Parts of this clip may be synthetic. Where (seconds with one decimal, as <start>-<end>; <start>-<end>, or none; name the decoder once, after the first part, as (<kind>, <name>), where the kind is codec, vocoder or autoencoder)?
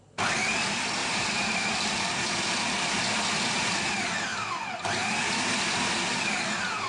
0.0-4.3 (vocoder, BigVGAN v2)